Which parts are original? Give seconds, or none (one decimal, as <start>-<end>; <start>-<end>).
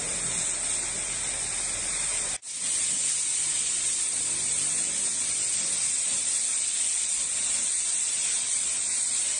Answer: 0.0-6.1; 8.1-9.4